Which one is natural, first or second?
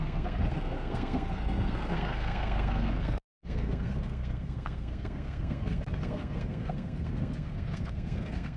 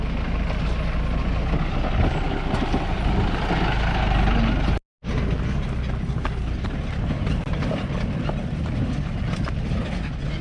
second